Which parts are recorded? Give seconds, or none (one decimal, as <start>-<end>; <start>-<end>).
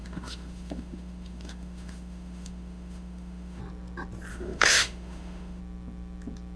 3.6-4.3; 5.6-6.6